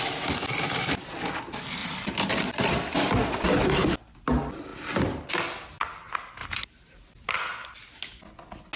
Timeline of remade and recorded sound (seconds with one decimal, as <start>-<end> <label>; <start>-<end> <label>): 0.0-1.8 recorded; 1.8-2.6 remade; 2.6-4.7 recorded; 4.7-5.3 remade; 5.3-6.4 recorded; 6.4-7.3 remade; 7.3-8.8 recorded